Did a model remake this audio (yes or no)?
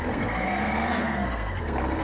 yes